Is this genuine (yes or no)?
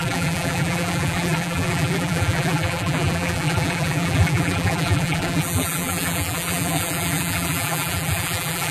no